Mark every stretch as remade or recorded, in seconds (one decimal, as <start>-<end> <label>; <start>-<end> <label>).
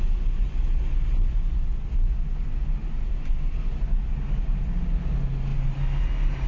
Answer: 0.0-6.5 recorded